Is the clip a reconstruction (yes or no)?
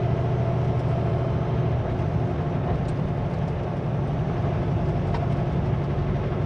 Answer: no